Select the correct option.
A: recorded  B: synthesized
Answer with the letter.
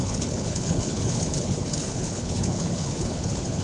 B